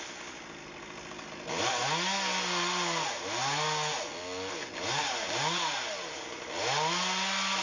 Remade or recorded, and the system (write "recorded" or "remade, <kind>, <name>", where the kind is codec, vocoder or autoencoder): recorded